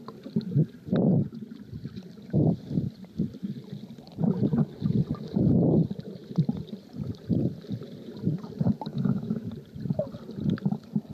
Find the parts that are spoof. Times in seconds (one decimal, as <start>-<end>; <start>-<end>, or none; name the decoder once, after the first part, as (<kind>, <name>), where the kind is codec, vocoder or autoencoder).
8.9-9.5 (autoencoder, DAC-VAE)